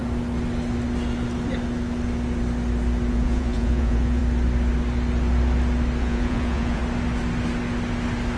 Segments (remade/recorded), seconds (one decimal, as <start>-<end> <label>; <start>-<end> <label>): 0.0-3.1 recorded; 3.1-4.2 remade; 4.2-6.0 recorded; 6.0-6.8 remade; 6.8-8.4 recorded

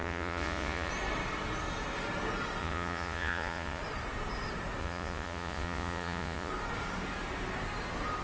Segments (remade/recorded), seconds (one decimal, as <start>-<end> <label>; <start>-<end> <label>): 0.0-0.9 remade; 0.9-2.6 recorded; 2.6-3.8 remade; 3.8-4.8 recorded; 4.8-6.5 remade; 6.5-8.2 recorded

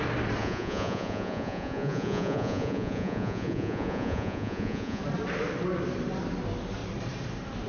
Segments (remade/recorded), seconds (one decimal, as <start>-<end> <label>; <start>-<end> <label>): 0.0-0.4 recorded; 0.4-5.0 remade; 5.0-7.7 recorded